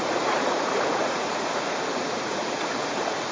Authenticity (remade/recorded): remade